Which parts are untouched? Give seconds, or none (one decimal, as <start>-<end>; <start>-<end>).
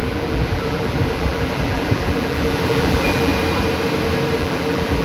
3.3-4.4